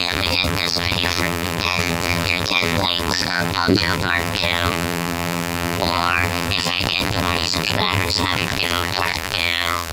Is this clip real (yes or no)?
no